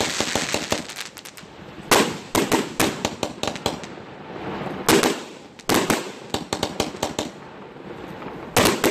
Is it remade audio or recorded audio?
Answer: recorded